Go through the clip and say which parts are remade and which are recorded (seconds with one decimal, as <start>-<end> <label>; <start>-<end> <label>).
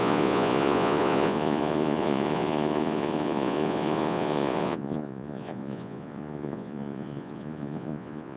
0.0-8.4 remade